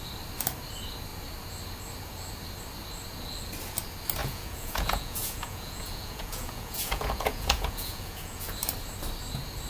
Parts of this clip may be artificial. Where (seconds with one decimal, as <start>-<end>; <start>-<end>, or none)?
4.2-8.5